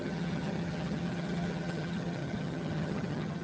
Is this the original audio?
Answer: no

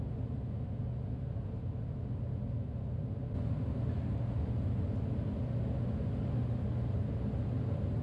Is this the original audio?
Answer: yes